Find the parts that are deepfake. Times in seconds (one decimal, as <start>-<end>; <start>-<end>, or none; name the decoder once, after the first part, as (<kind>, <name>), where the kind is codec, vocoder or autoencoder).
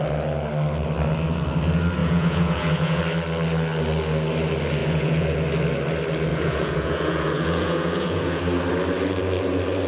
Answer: 2.0-3.0 (vocoder, Vocos); 4.8-5.4; 6.3-8.4